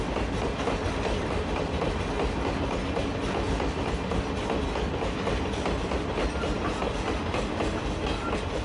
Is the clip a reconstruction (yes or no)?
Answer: no